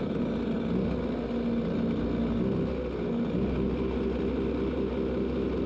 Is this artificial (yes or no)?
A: no